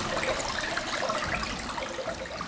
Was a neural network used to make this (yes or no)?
no